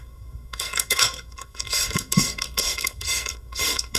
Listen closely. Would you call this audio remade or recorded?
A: remade